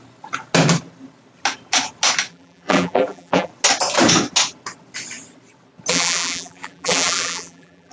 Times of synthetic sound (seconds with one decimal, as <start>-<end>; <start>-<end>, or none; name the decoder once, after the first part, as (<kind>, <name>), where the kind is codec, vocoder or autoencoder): 2.3-3.5 (vocoder, BigVGAN v2); 5.9-7.9